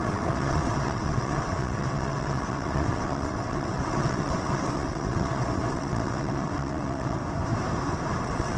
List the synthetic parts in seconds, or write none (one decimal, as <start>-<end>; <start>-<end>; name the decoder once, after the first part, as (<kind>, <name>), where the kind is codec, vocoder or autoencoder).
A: 0.0-7.2 (vocoder, WaveNeXt); 8.2-8.6